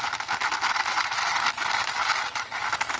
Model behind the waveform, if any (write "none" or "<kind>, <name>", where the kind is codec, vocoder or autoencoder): none